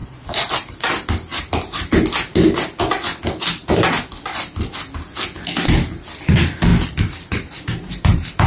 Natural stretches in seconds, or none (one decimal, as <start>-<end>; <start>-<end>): 0.7-1.3; 1.9-6.7